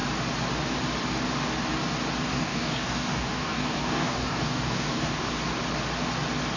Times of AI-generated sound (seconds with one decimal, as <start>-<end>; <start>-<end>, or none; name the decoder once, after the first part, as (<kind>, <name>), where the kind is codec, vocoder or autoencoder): 2.3-5.3 (codec, DAC)